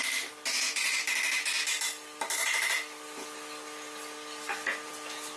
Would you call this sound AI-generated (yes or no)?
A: no